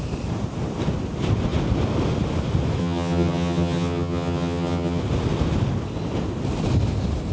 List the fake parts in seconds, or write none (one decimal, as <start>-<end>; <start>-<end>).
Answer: 2.8-5.0